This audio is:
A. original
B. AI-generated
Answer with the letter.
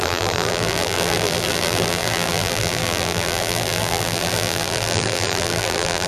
B